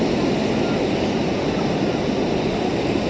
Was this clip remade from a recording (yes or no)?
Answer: no